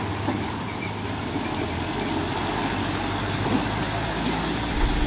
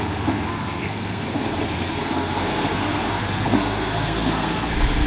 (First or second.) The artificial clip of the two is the second